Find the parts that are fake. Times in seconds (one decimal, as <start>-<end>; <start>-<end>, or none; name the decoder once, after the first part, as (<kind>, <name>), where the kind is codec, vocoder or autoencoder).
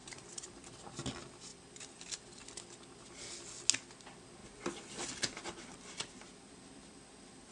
0.0-0.7 (vocoder, BigVGAN v2); 1.5-2.2; 4.4-7.5